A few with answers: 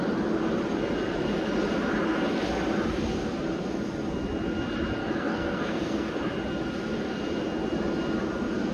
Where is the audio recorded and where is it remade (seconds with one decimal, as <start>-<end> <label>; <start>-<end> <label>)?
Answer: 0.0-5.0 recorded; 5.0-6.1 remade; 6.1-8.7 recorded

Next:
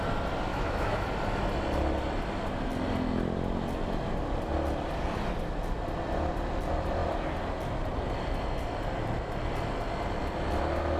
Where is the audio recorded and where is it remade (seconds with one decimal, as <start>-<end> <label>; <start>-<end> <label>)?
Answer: 0.0-0.5 recorded; 0.5-1.1 remade; 1.1-11.0 recorded

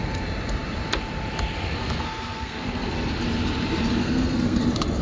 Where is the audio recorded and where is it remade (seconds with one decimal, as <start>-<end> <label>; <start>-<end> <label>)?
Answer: 0.0-1.8 recorded; 1.8-3.1 remade; 3.1-4.0 recorded; 4.0-4.6 remade; 4.6-5.0 recorded

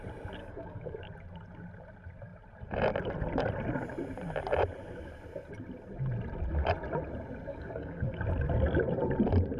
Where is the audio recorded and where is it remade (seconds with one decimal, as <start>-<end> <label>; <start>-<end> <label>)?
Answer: 0.0-0.4 recorded; 0.4-1.0 remade; 1.0-7.5 recorded; 7.5-8.2 remade; 8.2-9.6 recorded

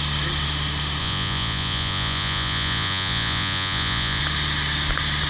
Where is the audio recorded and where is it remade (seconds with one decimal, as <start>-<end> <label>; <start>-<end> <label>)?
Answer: 0.0-1.0 recorded; 1.0-4.2 remade; 4.2-5.3 recorded

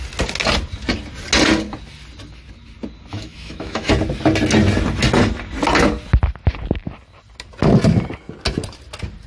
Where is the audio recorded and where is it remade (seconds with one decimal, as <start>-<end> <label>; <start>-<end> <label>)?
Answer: 0.0-3.1 recorded; 3.1-3.9 remade; 3.9-9.3 recorded

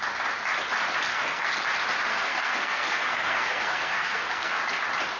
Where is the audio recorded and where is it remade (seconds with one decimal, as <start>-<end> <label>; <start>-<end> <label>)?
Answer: 0.0-1.1 recorded; 1.1-1.6 remade; 1.6-2.1 recorded; 2.1-4.6 remade; 4.6-5.2 recorded

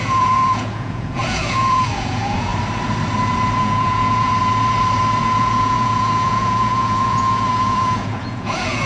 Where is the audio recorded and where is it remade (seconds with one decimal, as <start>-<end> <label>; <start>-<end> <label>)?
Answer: 0.0-2.5 remade; 2.5-3.6 recorded; 3.6-4.3 remade; 4.3-5.2 recorded; 5.2-8.9 remade